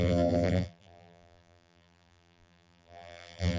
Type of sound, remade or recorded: remade